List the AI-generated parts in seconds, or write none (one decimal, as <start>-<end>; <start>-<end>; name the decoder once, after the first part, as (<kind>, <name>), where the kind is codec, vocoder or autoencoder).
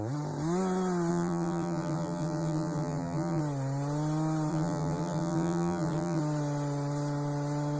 1.1-3.4 (vocoder, BigVGAN v2); 4.5-6.2